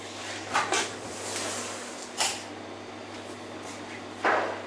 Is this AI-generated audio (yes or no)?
no